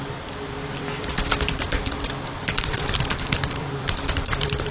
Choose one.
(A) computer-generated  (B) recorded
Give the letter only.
A